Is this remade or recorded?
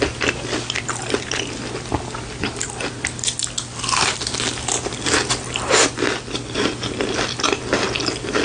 recorded